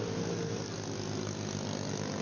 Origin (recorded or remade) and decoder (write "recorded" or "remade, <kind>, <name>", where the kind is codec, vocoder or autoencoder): recorded